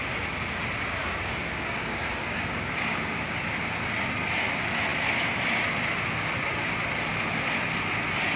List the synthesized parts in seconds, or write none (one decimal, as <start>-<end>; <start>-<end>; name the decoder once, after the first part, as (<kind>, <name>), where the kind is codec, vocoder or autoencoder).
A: 1.0-3.2 (codec, DAC)